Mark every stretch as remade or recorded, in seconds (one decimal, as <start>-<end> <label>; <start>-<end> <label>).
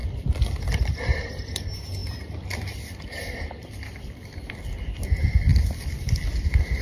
0.0-0.9 recorded; 0.9-6.8 remade